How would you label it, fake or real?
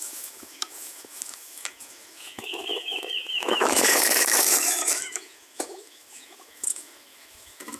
fake